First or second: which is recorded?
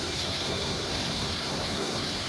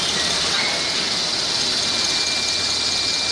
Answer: second